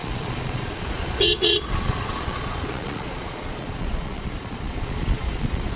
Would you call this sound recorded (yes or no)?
no